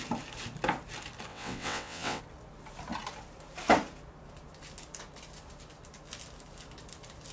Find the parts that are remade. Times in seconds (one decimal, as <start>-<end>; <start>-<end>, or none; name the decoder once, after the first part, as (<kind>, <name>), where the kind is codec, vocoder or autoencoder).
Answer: 1.3-2.2 (vocoder, WaveNeXt)